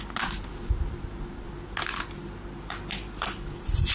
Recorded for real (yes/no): yes